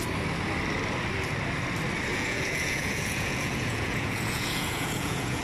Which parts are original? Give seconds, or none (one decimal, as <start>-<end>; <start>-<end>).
0.0-2.1